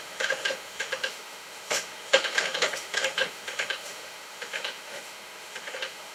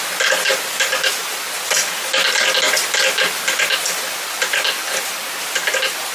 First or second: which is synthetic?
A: first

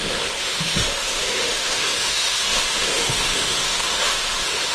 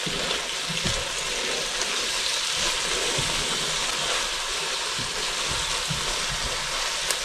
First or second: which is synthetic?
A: first